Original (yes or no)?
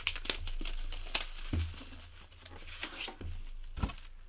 yes